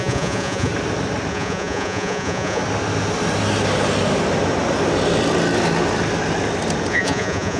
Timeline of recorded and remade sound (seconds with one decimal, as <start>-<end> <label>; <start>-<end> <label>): 0.0-0.7 remade; 0.7-1.3 recorded; 1.3-2.6 remade; 2.6-6.9 recorded; 6.9-7.6 remade